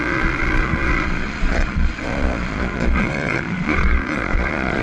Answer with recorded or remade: remade